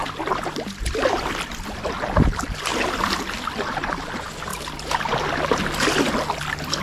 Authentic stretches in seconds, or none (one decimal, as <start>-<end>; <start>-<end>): 0.0-6.8